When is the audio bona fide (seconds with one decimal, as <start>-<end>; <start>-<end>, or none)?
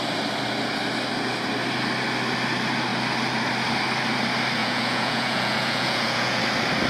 0.0-4.6; 6.4-6.9